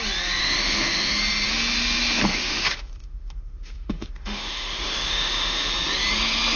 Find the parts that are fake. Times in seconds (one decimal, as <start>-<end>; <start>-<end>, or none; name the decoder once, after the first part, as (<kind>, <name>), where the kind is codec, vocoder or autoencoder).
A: 0.4-1.2 (autoencoder, DAC-VAE); 2.3-5.7